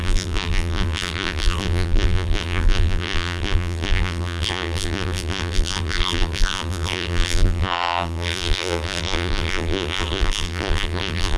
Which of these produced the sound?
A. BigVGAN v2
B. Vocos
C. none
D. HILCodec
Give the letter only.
A